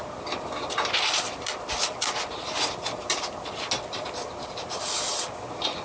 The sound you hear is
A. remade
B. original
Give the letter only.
B